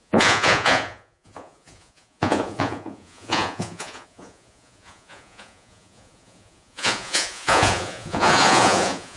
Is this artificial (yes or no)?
yes